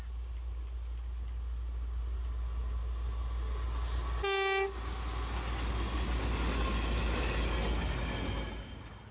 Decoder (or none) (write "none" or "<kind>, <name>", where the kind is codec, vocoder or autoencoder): none